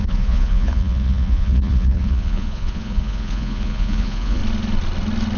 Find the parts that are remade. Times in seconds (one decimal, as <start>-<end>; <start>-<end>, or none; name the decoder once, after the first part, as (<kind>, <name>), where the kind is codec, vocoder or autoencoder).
0.0-4.4 (vocoder, Vocos)